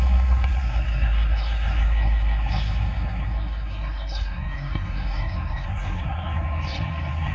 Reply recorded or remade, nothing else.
remade